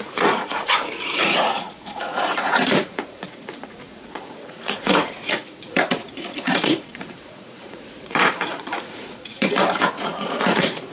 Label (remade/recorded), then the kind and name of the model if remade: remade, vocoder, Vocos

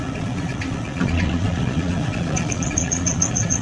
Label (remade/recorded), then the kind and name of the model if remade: remade, vocoder, Vocos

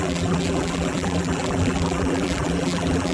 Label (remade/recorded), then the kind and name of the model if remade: remade, vocoder, BigVGAN v2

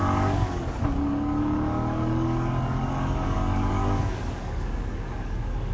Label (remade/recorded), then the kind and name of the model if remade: remade, codec, DAC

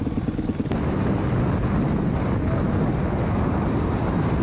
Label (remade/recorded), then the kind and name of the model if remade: remade, vocoder, BigVGAN v2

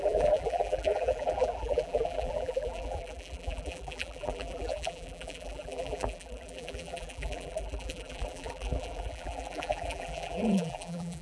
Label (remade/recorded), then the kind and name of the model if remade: remade, vocoder, BigVGAN v2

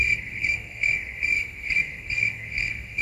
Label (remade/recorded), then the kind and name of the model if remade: remade, codec, SNAC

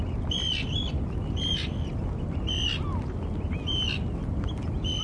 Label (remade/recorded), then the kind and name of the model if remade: recorded